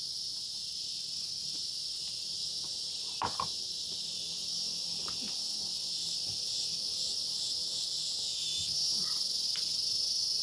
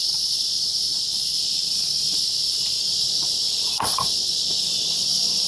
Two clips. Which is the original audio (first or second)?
first